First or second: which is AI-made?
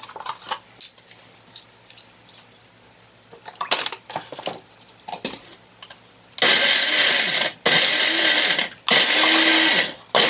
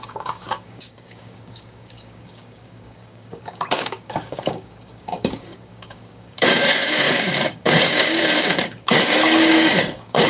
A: second